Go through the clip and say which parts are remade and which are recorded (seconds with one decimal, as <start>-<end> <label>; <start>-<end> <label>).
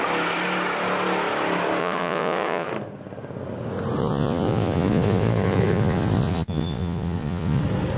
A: 0.0-1.8 recorded; 1.8-2.7 remade; 2.7-4.0 recorded; 4.0-7.6 remade; 7.6-8.0 recorded